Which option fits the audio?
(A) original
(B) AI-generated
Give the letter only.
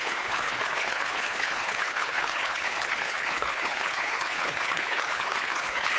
B